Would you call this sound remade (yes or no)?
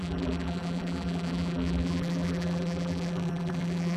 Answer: yes